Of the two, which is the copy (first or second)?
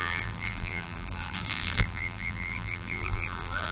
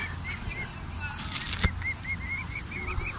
first